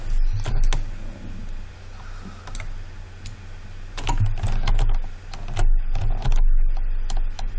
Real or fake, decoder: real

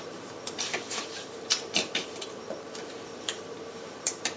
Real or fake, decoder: fake, vocoder, BigVGAN v2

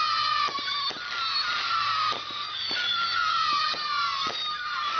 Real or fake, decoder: real